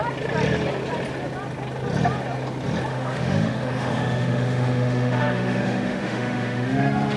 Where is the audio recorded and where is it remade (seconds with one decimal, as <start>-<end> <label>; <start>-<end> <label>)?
0.0-2.9 recorded; 2.9-7.2 remade